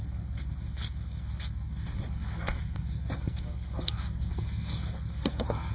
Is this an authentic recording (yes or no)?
no